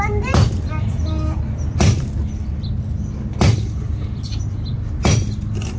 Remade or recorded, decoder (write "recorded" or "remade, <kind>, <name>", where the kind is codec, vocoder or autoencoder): recorded